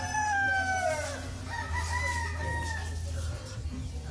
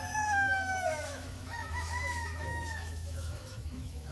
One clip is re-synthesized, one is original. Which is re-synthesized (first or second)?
second